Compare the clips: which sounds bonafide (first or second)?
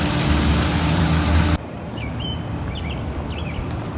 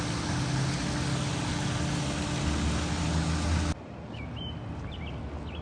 second